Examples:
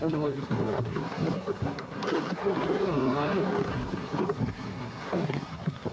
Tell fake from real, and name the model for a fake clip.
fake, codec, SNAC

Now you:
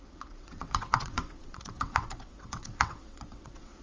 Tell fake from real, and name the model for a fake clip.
fake, vocoder, WaveNeXt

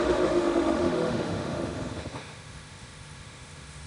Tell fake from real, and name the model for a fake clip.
fake, autoencoder, DAC-VAE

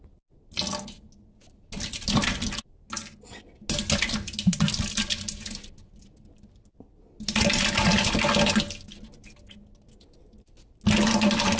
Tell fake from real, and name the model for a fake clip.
real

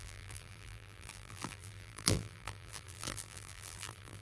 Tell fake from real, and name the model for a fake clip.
fake, vocoder, BigVGAN v2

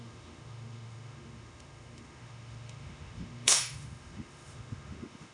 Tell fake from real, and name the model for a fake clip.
fake, autoencoder, DAC-VAE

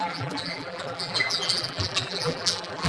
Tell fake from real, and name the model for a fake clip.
fake, vocoder, BigVGAN v2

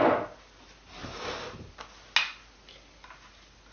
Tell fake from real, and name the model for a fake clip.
real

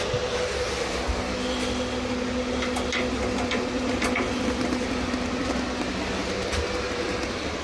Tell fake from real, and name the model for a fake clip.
real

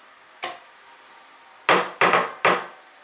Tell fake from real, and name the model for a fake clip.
real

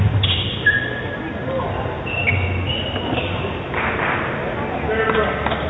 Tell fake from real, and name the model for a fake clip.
real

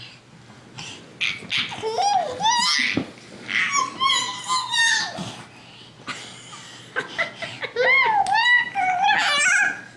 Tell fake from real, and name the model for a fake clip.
real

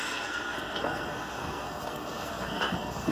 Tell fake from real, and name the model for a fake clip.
fake, codec, SNAC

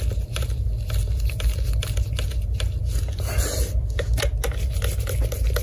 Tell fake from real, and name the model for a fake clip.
real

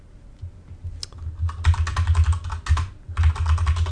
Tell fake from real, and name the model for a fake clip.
real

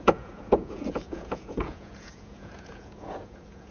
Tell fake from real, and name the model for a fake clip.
fake, vocoder, Vocos